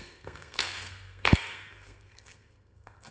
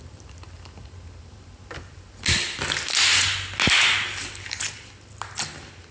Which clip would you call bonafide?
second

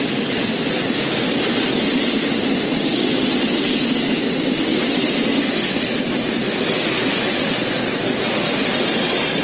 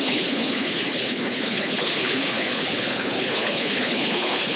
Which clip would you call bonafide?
first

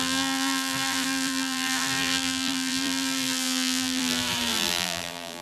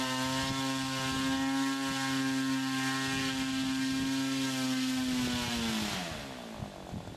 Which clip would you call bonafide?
second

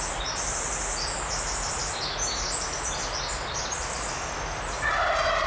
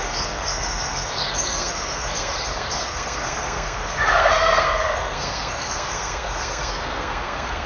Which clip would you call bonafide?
first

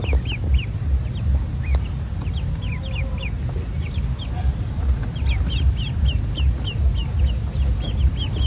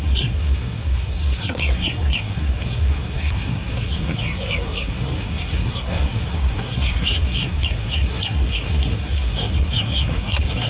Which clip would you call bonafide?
first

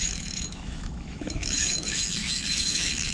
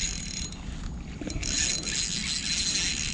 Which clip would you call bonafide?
second